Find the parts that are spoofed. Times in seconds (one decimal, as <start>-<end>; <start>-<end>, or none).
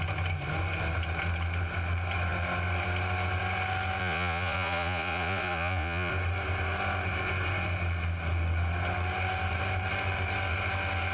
4.0-6.1